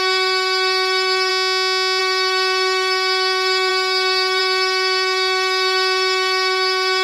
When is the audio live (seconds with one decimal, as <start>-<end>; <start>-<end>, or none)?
1.3-2.0